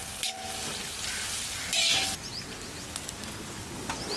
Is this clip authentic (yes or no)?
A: yes